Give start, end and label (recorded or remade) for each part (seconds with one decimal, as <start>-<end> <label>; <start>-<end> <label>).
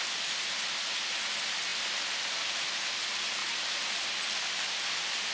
0.0-5.3 recorded